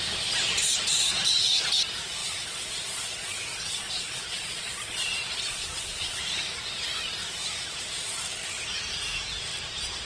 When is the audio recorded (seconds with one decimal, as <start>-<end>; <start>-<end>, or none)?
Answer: 0.0-2.2; 6.2-10.1